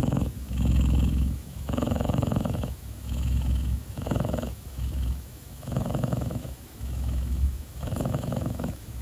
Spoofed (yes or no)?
yes